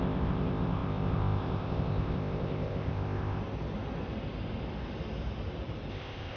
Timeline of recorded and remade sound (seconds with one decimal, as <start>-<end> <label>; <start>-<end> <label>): 0.0-3.4 remade; 3.4-5.9 recorded; 5.9-6.4 remade